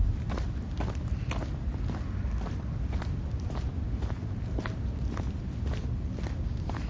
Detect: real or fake real